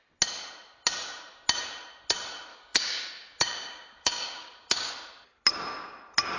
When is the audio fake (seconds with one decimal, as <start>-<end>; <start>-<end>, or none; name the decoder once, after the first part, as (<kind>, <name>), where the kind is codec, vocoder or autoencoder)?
2.5-4.9 (codec, DAC)